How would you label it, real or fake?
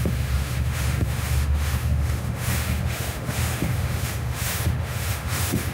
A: fake